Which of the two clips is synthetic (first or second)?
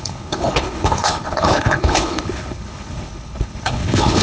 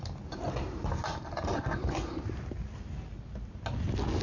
first